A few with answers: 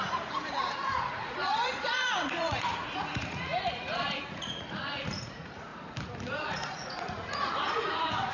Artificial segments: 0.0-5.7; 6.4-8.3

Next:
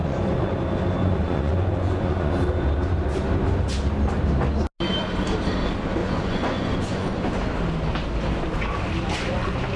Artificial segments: 0.0-0.5; 1.0-2.3; 6.0-7.2

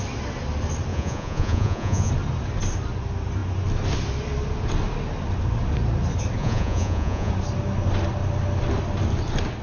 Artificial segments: 0.9-2.1; 6.4-7.3

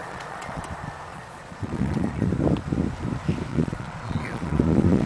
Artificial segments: 0.0-0.6; 1.1-2.3; 3.5-5.1

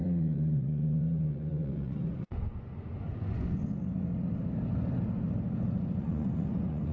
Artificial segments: 0.0-4.1; 6.0-6.9

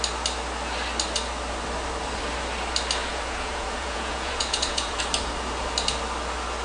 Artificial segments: 3.0-5.0

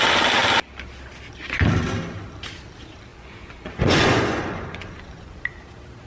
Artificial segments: 3.1-5.6